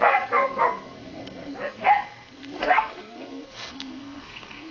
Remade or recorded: remade